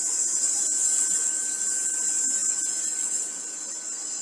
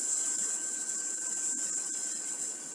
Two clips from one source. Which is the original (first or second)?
first